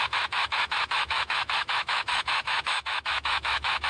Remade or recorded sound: remade